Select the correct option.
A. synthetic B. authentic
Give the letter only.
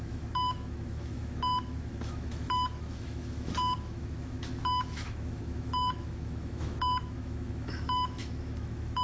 A